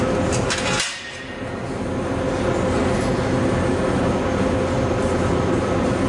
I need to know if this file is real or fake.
real